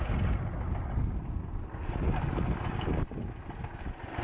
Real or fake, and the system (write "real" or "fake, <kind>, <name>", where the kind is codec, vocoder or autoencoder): real